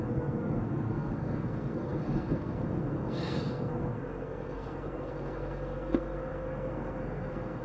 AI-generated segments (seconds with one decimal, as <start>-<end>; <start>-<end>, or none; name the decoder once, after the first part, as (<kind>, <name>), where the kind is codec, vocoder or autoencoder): 0.0-7.6 (codec, SNAC)